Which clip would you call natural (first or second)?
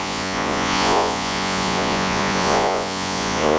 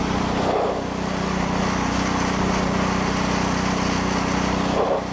second